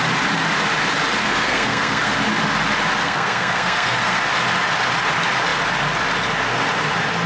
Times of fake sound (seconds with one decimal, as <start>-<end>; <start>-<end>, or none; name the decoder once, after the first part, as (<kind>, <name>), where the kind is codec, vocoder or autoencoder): 1.2-2.1 (codec, SNAC); 3.0-4.2